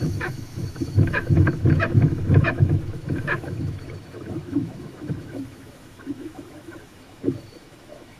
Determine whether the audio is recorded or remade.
remade